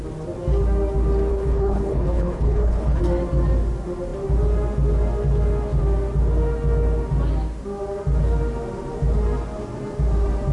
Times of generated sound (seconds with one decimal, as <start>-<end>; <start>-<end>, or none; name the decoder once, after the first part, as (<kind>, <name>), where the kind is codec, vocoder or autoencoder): 1.3-3.0 (codec, HILCodec)